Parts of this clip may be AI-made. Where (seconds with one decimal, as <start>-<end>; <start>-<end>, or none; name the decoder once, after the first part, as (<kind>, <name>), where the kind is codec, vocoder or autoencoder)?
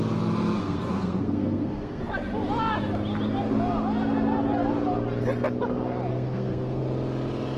0.6-2.0 (codec, SNAC); 6.1-6.8